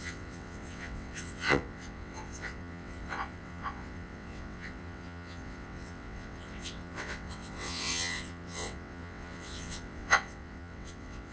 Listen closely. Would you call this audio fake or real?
fake